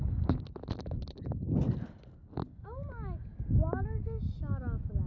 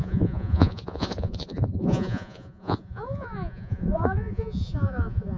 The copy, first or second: second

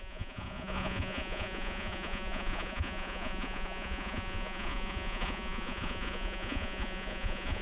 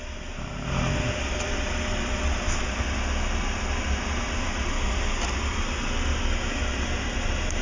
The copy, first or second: first